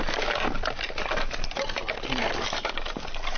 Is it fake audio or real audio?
real